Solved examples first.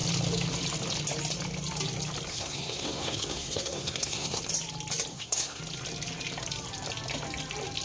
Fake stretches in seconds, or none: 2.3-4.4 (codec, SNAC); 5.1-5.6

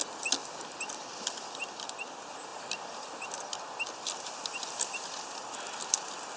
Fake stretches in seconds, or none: none

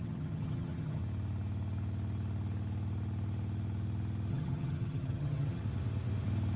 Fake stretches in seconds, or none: 0.0-1.0 (vocoder, HiFi-GAN); 4.3-5.6